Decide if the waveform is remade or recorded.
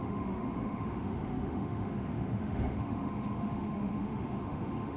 remade